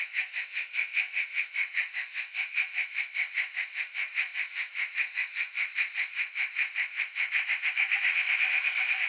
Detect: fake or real fake